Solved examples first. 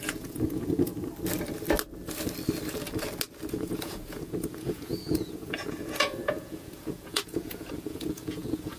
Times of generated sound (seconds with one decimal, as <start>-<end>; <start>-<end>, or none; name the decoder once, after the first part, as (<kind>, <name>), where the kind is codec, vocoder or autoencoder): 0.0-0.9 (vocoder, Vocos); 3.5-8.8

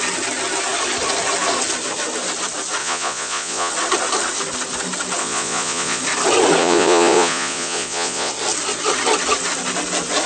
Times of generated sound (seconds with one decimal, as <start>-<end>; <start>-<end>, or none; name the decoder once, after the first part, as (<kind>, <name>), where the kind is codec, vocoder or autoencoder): 2.8-3.7 (vocoder, Vocos); 5.2-6.0; 6.6-8.3

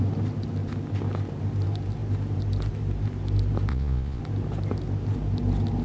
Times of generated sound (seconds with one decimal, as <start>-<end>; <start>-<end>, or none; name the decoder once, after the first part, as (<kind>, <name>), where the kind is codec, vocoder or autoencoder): 3.7-4.2 (vocoder, Vocos)

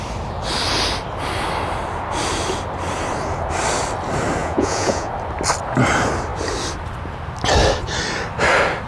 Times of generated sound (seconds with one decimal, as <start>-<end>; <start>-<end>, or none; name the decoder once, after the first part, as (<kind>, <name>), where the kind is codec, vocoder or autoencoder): 4.4-5.1 (vocoder, Vocos)

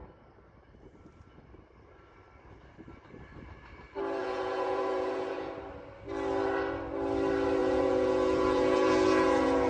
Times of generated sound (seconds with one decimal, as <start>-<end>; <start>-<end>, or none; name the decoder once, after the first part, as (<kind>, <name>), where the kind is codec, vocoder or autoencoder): 4.2-5.5 (vocoder, Vocos); 7.6-9.7

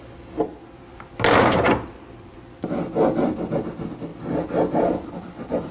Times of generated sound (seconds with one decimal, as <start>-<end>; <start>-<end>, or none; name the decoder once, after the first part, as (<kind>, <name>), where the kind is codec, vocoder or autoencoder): none